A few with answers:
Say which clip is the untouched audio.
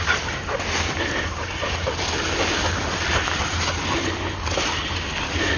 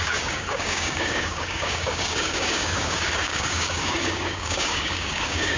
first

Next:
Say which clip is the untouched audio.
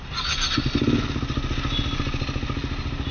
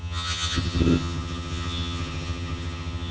first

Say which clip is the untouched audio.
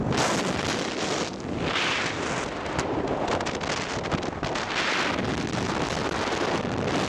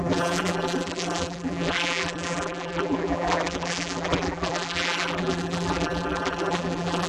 first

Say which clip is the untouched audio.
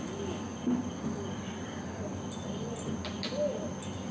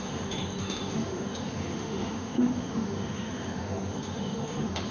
first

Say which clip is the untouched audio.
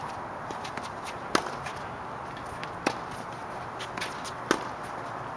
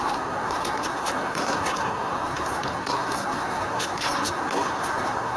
first